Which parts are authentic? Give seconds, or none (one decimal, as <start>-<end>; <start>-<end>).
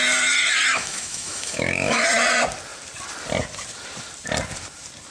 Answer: 0.0-0.7; 2.0-5.1